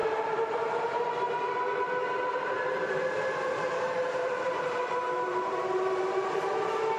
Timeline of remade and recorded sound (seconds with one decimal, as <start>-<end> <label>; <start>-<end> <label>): 0.0-1.3 remade; 1.3-2.3 recorded; 2.3-6.5 remade; 6.5-7.0 recorded